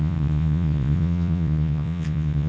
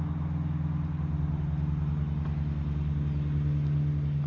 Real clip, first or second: second